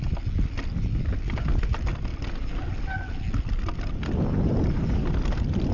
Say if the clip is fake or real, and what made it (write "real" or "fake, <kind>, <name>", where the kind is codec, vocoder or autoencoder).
real